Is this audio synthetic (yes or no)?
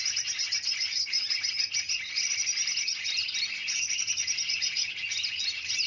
no